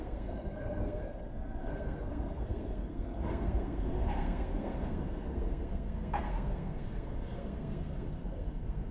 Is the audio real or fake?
fake